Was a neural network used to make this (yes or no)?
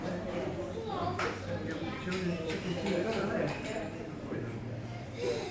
yes